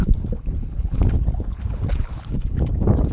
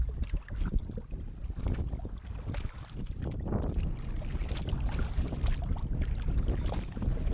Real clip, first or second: second